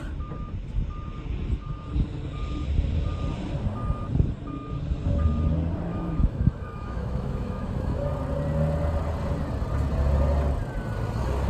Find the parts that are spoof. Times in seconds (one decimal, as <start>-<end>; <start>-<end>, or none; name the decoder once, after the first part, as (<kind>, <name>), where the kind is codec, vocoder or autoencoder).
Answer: 5.9-8.1 (autoencoder, DAC-VAE)